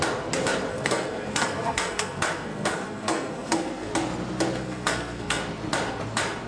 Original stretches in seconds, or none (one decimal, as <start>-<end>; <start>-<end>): 0.0-0.7; 3.9-4.6; 5.4-6.5